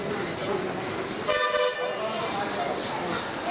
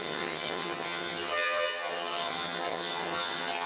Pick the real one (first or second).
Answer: first